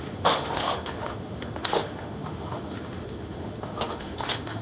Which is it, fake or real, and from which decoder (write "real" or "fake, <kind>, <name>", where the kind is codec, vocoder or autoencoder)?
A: fake, autoencoder, DAC-VAE